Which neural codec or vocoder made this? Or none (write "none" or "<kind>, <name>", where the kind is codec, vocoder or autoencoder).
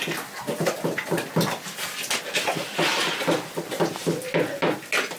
none